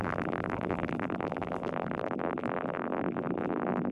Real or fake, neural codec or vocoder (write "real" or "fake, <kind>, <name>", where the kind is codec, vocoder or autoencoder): fake, vocoder, BigVGAN v2